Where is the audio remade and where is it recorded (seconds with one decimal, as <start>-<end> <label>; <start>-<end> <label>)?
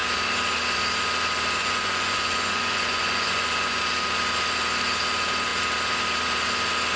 0.0-1.6 recorded; 1.6-3.8 remade; 3.8-7.0 recorded